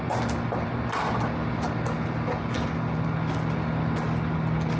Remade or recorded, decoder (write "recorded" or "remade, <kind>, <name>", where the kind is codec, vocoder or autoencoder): recorded